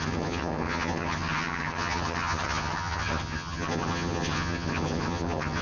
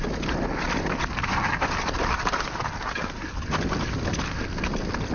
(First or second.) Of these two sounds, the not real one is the first